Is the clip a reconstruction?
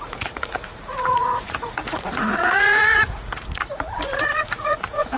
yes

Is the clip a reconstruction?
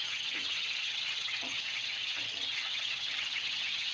yes